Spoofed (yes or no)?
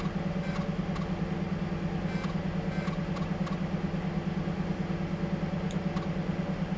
no